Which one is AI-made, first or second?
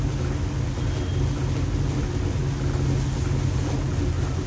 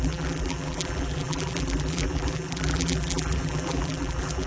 second